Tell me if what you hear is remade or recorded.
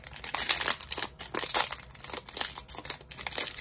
recorded